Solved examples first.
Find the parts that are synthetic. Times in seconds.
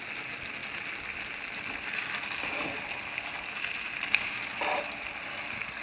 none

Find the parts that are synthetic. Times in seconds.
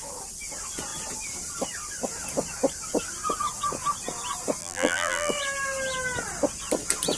4.6-5.3 (vocoder, BigVGAN v2)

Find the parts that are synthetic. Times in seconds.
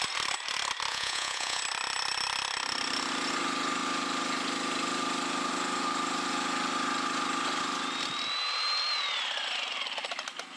0.9-1.6 (vocoder, Vocos)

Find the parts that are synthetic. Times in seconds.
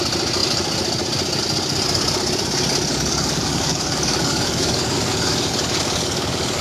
2.9-6.6 (codec, DAC)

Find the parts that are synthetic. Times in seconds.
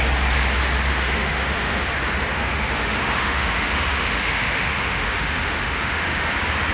0.9-1.9 (autoencoder, DAC-VAE); 2.3-6.3